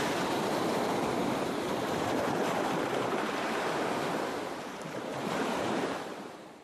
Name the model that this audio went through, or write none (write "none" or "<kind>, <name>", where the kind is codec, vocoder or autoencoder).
vocoder, BigVGAN v2